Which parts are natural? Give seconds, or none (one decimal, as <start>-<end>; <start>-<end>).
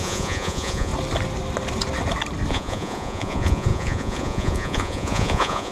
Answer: 0.9-2.5